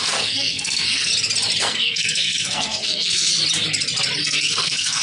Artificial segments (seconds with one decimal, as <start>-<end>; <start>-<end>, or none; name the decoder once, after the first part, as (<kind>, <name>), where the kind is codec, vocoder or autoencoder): 0.0-1.1 (codec, SNAC); 1.6-3.3; 4.2-5.0